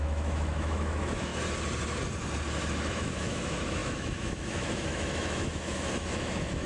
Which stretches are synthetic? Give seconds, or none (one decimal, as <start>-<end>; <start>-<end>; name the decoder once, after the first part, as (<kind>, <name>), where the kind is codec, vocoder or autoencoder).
0.0-1.3 (autoencoder, DAC-VAE); 2.9-6.7